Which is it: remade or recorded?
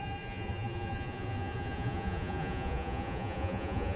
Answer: remade